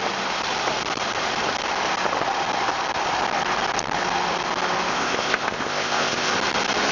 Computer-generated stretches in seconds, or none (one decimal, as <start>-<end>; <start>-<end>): 4.9-6.3